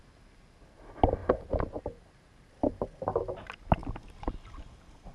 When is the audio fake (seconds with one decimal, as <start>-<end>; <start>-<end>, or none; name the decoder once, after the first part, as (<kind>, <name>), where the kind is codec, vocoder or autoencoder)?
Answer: none